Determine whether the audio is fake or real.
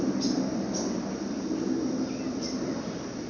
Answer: real